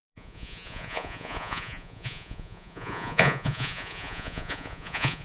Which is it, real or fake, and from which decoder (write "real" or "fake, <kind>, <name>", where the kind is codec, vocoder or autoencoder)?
fake, vocoder, Vocos